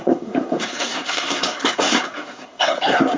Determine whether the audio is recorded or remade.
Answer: remade